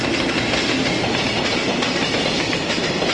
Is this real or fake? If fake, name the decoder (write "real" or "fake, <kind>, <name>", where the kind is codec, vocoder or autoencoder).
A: real